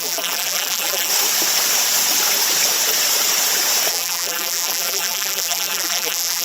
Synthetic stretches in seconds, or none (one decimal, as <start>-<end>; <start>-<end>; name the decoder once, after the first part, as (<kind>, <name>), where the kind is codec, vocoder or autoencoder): 0.0-1.1 (vocoder, BigVGAN v2); 3.9-6.4